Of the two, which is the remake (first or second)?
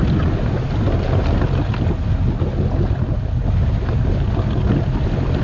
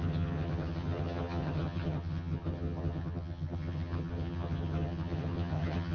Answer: second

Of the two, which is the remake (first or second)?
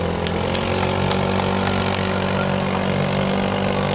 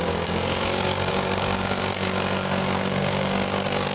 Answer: second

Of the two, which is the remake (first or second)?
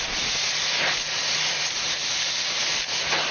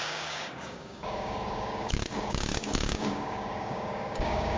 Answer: second